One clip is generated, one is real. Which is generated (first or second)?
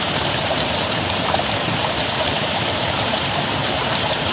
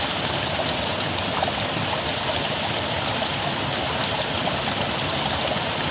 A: first